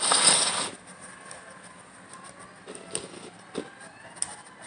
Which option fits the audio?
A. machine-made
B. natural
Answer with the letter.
B